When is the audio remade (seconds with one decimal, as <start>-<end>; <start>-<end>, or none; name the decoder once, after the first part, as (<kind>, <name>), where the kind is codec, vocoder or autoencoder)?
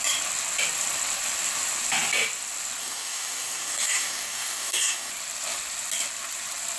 2.8-5.1 (codec, DAC)